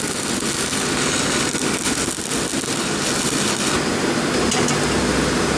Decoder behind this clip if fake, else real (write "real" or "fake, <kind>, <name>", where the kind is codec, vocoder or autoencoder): real